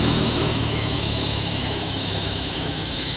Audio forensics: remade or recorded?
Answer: remade